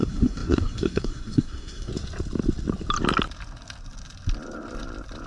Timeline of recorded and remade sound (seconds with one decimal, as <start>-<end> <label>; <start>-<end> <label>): 0.0-1.9 remade; 1.9-5.3 recorded